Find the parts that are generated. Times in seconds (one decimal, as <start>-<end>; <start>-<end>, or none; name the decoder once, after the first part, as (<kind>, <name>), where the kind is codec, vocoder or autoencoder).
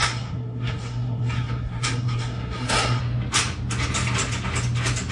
0.0-3.0 (codec, SNAC)